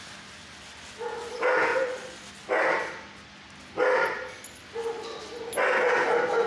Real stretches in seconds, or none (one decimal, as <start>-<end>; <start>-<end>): 0.0-1.7; 2.2-6.5